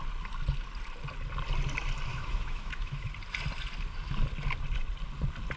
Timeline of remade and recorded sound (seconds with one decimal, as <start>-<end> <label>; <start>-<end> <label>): 0.0-2.1 recorded; 2.1-3.1 remade; 3.1-5.6 recorded